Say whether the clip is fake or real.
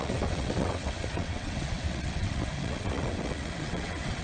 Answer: fake